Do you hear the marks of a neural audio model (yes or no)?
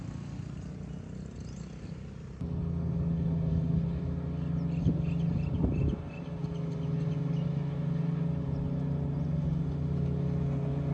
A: no